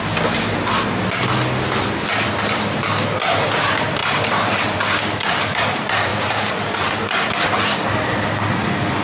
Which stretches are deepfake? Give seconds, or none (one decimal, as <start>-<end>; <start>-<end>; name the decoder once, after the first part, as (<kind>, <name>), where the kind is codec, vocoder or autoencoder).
4.0-4.8 (vocoder, BigVGAN v2); 6.1-7.3